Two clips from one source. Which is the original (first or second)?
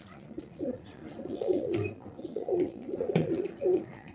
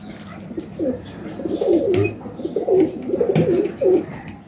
second